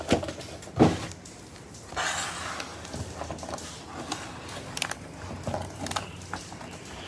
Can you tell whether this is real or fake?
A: real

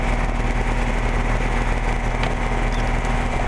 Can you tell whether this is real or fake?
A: real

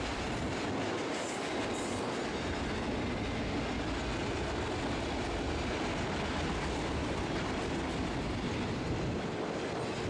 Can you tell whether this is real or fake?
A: real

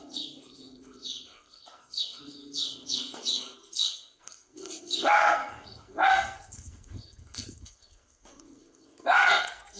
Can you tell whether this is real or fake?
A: fake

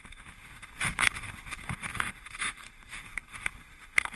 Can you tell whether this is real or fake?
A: fake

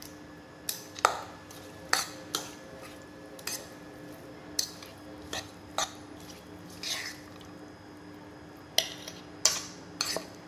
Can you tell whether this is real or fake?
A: real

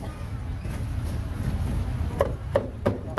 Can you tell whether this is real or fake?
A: real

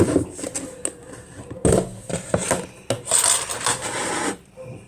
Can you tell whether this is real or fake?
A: real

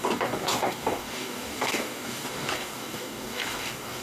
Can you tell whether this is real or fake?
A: fake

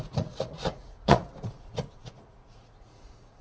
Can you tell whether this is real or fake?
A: fake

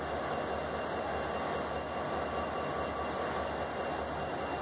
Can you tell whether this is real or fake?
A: real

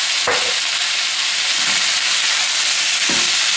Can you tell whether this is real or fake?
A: real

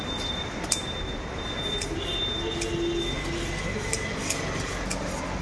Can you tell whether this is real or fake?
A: real